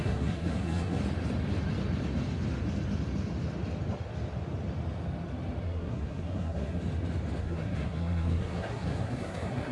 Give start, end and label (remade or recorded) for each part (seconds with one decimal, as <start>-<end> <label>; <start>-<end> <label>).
0.0-1.0 remade; 1.0-5.6 recorded; 5.6-6.8 remade; 6.8-7.4 recorded; 7.4-9.7 remade